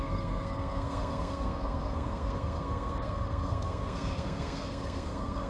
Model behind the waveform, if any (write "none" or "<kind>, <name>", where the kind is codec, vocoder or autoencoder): codec, SNAC